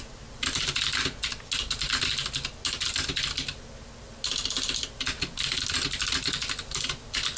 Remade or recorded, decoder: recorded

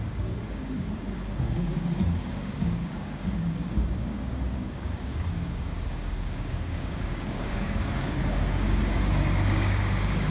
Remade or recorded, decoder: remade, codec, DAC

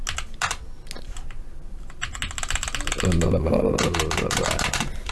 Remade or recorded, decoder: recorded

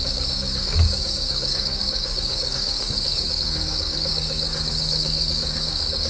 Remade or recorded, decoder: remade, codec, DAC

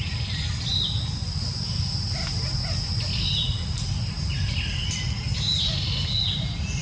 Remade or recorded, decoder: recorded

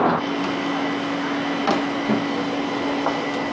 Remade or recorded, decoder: recorded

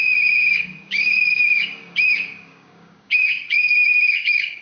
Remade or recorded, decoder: remade, codec, DAC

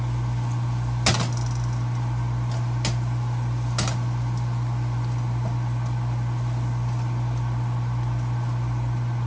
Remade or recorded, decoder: recorded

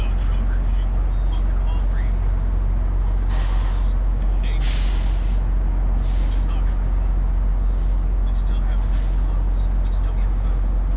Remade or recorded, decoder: recorded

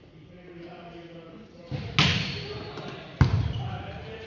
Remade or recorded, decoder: recorded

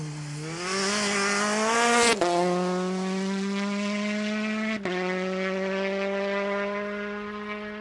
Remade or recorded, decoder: recorded